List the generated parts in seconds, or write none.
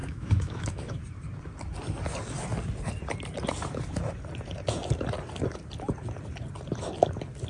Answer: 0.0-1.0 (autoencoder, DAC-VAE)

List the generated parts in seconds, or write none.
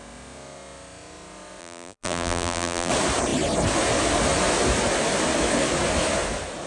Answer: 1.6-2.9 (vocoder, BigVGAN v2)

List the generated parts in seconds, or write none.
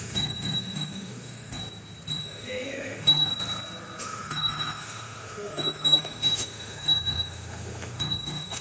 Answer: 0.0-1.6 (autoencoder, DAC-VAE); 2.1-3.3; 4.0-8.6